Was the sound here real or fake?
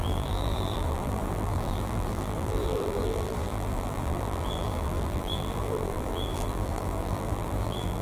fake